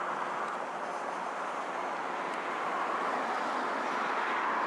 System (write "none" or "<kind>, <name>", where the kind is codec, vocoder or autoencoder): none